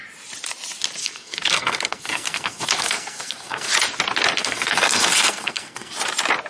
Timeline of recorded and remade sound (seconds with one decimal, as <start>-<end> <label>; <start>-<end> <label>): 0.0-1.0 recorded; 1.0-3.7 remade; 3.7-4.4 recorded; 4.4-5.9 remade; 5.9-6.5 recorded